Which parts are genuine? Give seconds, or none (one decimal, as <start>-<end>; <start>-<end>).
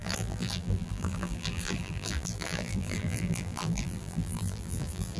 none